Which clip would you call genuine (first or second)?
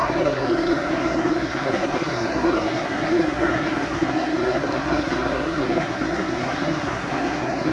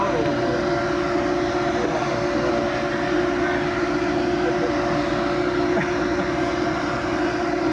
second